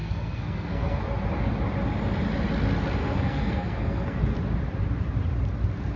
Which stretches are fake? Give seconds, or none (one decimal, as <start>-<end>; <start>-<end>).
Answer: 0.0-1.0; 3.0-4.2